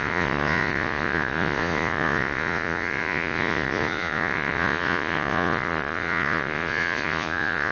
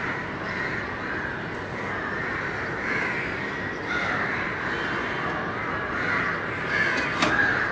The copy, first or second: first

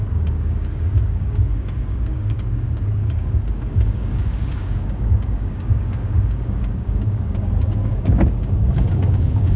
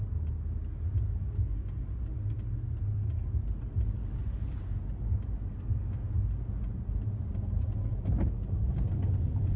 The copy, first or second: first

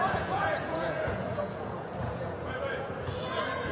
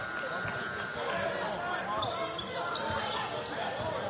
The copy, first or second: first